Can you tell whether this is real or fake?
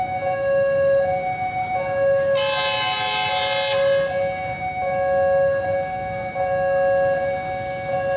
real